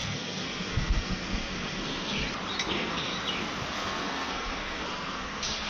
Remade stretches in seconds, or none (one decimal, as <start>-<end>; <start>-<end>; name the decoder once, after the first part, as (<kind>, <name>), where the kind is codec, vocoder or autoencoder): 0.0-2.2 (codec, SNAC); 2.7-3.1; 3.7-5.7